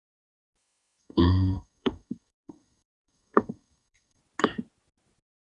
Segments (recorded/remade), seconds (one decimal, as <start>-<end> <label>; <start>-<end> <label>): 0.0-1.0 recorded; 1.0-4.2 remade; 4.2-5.4 recorded